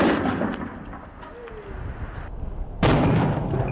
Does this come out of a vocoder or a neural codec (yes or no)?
no